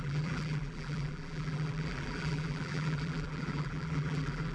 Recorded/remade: remade